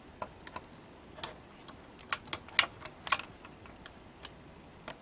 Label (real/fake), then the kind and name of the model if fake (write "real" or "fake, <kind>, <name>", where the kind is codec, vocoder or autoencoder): real